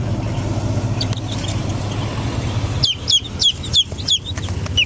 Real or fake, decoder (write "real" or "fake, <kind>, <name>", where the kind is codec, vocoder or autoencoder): real